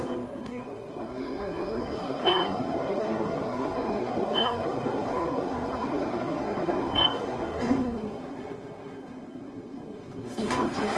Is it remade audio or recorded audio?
remade